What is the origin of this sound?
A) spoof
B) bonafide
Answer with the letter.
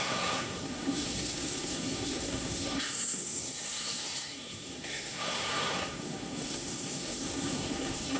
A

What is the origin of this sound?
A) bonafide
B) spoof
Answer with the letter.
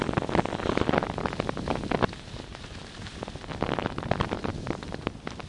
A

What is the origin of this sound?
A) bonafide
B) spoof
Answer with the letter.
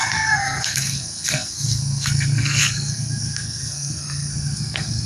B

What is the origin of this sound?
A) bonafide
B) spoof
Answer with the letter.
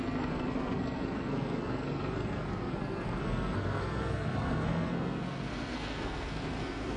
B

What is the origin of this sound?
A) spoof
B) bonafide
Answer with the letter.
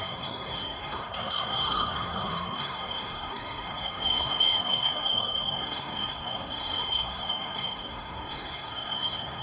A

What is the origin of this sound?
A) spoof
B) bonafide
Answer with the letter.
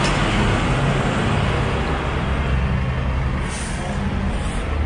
B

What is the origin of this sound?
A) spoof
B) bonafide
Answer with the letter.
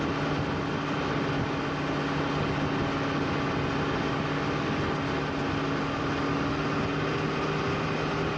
B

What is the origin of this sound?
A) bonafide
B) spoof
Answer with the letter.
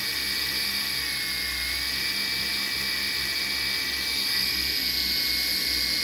A